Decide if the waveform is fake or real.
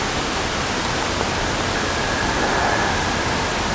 real